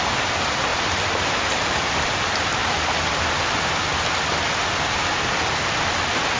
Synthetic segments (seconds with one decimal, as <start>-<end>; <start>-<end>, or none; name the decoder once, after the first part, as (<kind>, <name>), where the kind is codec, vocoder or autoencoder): 0.0-0.7 (vocoder, BigVGAN v2); 1.5-2.6; 5.7-6.4